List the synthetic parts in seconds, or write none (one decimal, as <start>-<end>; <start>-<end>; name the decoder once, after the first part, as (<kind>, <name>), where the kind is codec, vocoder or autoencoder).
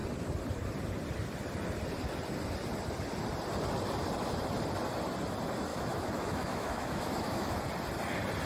5.7-7.6 (autoencoder, DAC-VAE)